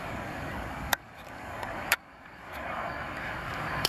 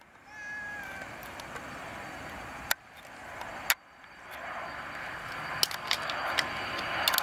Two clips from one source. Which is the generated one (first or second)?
first